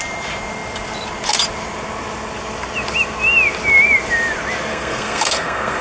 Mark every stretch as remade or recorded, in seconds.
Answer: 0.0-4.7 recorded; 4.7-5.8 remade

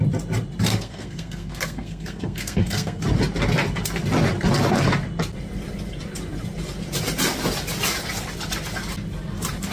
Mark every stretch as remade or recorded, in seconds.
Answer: 0.0-0.7 recorded; 0.7-3.0 remade; 3.0-9.7 recorded

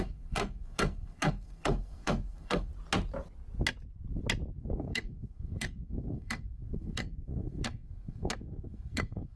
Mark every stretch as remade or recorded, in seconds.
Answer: 0.0-2.7 remade; 2.7-4.6 recorded; 4.6-9.4 remade